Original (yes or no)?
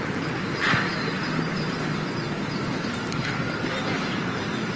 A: yes